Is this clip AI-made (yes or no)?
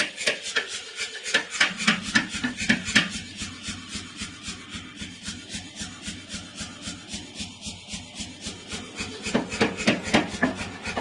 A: no